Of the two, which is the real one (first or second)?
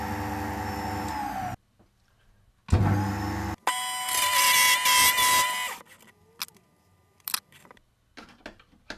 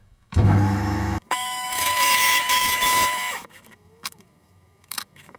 first